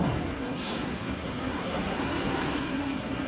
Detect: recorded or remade remade